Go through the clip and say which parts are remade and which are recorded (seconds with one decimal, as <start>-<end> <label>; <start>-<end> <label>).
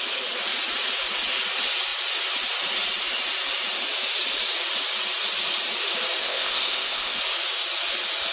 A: 0.0-6.2 recorded; 6.2-7.2 remade; 7.2-8.3 recorded